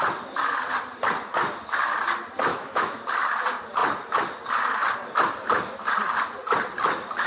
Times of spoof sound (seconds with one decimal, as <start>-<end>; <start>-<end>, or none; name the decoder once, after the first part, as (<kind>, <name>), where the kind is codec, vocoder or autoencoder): 2.5-3.0 (autoencoder, DAC-VAE)